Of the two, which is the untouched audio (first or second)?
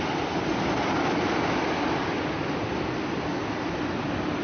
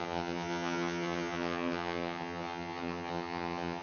first